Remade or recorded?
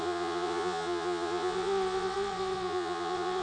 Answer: remade